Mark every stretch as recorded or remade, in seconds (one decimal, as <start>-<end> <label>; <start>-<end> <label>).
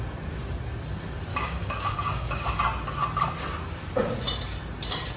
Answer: 0.0-1.3 recorded; 1.3-2.6 remade; 2.6-5.2 recorded